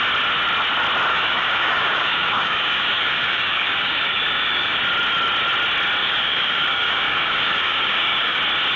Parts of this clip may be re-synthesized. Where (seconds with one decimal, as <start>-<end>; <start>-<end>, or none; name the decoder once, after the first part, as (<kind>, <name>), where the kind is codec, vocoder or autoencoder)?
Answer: 1.1-4.8 (codec, DAC); 6.0-8.4